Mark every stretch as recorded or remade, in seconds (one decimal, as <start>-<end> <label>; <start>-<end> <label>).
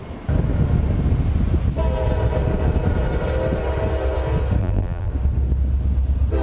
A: 0.0-4.6 recorded; 4.6-5.1 remade; 5.1-6.4 recorded